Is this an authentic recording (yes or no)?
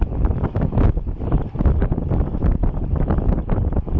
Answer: yes